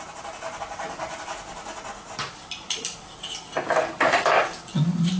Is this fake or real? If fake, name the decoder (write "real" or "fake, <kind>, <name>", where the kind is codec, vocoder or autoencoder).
real